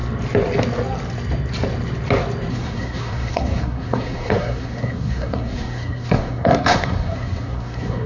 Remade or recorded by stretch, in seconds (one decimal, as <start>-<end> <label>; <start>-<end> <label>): 0.0-2.5 recorded; 2.5-8.1 remade